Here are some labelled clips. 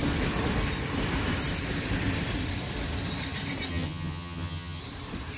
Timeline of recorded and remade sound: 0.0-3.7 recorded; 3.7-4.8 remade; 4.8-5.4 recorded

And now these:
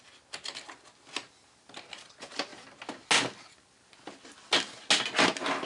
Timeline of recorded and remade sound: 0.0-5.7 recorded

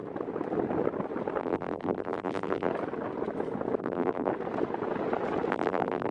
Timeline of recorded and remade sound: 0.0-1.4 recorded; 1.4-2.7 remade; 2.7-3.8 recorded; 3.8-4.3 remade; 4.3-5.5 recorded; 5.5-6.1 remade

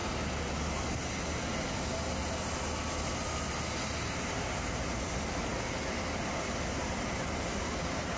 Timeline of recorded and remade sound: 0.0-4.1 recorded; 4.1-5.5 remade; 5.5-7.3 recorded; 7.3-8.2 remade

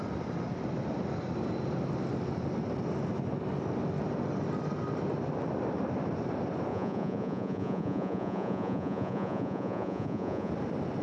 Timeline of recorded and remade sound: 0.0-6.7 recorded; 6.7-10.5 remade; 10.5-11.0 recorded

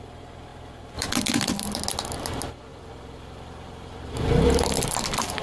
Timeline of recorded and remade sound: 0.0-0.5 recorded; 0.5-1.8 remade; 1.8-2.7 recorded; 2.7-5.4 remade